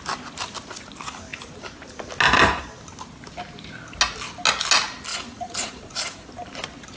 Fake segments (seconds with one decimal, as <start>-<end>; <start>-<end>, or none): 5.1-6.3